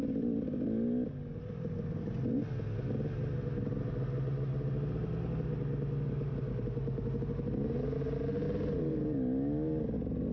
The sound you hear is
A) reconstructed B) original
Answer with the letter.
B